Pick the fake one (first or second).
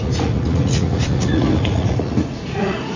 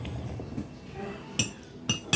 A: first